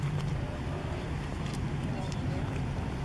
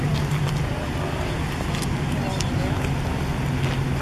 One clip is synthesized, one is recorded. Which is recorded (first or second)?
second